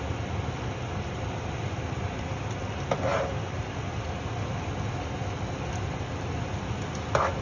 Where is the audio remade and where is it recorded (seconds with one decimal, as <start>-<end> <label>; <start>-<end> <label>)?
0.0-7.4 recorded